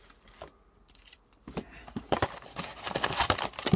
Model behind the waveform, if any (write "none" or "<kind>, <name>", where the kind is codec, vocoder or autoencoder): none